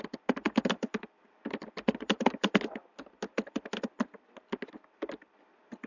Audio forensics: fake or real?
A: real